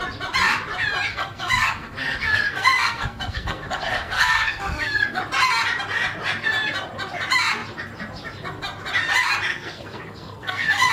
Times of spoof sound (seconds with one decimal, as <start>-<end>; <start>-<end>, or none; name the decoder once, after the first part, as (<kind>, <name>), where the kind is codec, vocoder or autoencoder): 1.1-5.2 (codec, SNAC); 9.5-10.9